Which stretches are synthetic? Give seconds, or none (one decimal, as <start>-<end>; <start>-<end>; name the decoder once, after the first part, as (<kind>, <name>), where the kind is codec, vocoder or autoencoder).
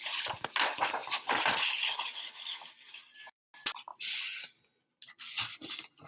none